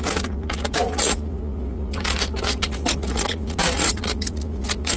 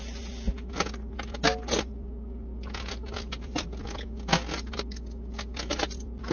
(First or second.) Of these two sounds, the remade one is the first